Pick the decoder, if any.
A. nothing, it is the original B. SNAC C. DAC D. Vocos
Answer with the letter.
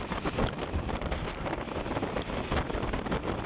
A